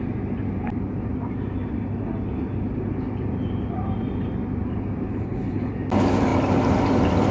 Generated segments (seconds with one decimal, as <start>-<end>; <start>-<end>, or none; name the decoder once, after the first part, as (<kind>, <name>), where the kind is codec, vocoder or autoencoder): 5.1-5.7 (codec, HILCodec)